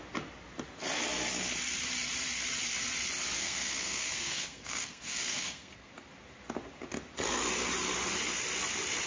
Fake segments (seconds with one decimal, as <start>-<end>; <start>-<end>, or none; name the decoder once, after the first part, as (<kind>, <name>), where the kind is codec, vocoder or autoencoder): 3.4-5.9 (codec, SNAC)